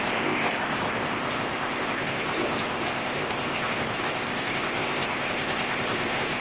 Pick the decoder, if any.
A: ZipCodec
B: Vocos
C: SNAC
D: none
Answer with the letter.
A